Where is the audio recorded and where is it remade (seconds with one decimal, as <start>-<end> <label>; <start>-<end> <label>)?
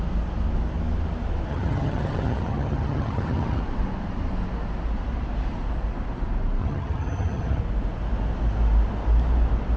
0.0-1.5 recorded; 1.5-3.6 remade; 3.6-6.6 recorded; 6.6-7.6 remade; 7.6-9.8 recorded